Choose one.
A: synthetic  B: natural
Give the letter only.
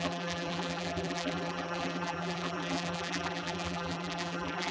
A